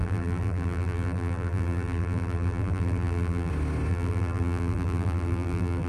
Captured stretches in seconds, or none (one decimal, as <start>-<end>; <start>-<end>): 3.5-3.9